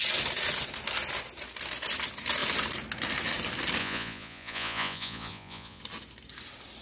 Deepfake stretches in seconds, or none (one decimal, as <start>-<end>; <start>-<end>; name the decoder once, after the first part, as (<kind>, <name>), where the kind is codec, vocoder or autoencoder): 3.8-5.8 (vocoder, Vocos)